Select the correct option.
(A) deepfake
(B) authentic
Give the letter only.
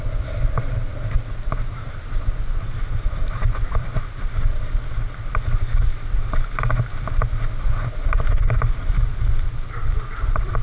B